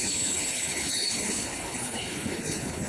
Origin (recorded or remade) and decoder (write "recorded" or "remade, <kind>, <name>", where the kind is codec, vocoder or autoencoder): remade, codec, HILCodec